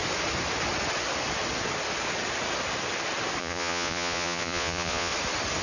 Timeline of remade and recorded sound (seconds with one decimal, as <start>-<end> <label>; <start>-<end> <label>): 0.0-3.4 recorded; 3.4-5.1 remade; 5.1-5.6 recorded